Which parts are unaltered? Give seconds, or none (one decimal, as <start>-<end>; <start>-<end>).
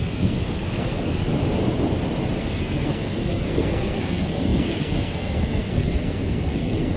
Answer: 1.3-2.4